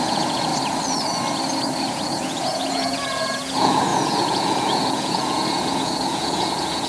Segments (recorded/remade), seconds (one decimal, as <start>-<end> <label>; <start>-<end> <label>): 0.0-0.5 remade; 0.5-1.9 recorded; 1.9-6.9 remade